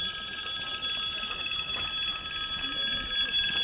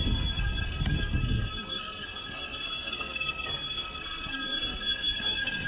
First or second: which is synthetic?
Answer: second